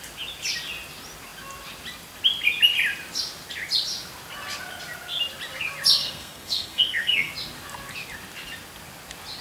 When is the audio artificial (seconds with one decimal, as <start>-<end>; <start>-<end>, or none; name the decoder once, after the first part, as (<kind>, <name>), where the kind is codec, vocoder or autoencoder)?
6.0-7.3 (codec, SNAC)